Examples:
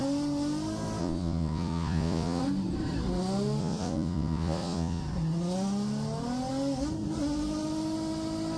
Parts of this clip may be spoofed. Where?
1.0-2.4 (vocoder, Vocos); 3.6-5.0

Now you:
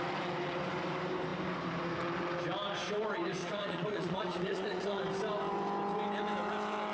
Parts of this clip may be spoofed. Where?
3.4-5.0 (vocoder, Vocos)

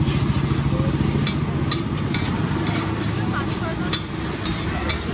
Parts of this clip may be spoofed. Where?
none

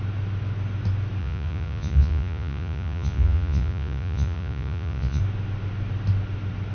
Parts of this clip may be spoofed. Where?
1.2-5.2 (vocoder, Vocos)

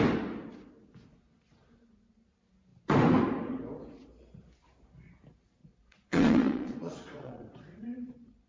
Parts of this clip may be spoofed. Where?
5.6-8.5 (vocoder, Vocos)